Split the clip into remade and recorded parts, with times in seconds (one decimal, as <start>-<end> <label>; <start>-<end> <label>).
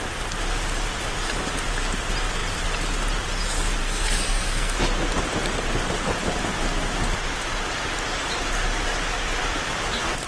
0.0-3.8 recorded; 3.8-4.8 remade; 4.8-10.3 recorded